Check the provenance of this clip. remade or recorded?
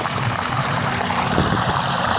recorded